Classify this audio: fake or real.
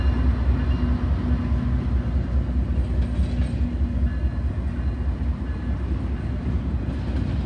real